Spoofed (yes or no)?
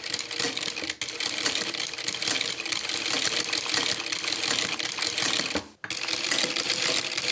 no